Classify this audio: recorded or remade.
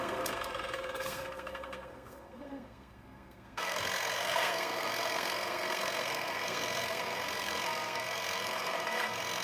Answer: remade